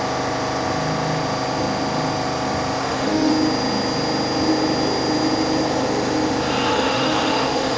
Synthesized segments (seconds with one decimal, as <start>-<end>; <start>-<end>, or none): 2.8-3.3; 6.7-7.8